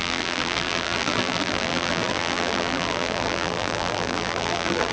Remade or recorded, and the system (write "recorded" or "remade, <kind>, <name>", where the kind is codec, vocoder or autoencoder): remade, vocoder, BigVGAN v2